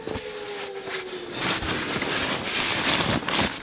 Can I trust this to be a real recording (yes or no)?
yes